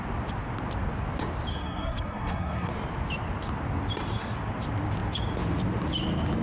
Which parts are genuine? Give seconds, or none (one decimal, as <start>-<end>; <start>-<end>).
0.0-1.5; 2.7-6.4

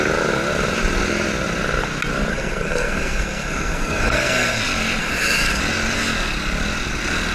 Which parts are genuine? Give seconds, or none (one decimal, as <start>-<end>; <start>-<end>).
0.0-2.3; 4.6-5.0; 5.6-7.3

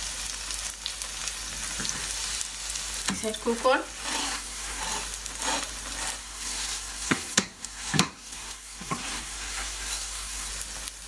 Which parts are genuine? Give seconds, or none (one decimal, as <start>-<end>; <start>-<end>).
0.0-4.2; 4.8-6.2; 10.5-11.1

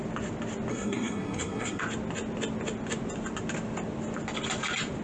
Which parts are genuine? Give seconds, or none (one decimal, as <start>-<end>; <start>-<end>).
0.0-0.7; 1.8-5.0

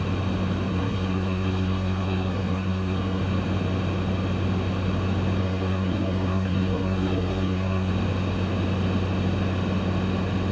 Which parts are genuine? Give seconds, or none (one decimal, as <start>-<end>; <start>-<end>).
0.0-0.7; 3.2-5.4; 7.9-10.5